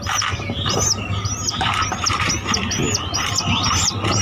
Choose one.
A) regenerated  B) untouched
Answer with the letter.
B